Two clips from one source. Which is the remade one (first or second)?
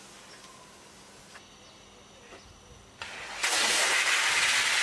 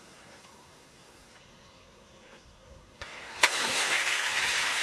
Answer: second